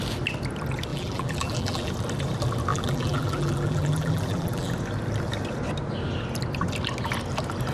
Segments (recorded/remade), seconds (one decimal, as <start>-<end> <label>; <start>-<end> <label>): 0.0-0.9 recorded; 0.9-1.9 remade; 1.9-2.7 recorded; 2.7-4.7 remade; 4.7-7.7 recorded